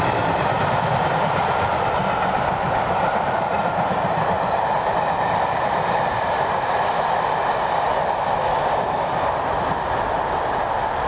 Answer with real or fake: real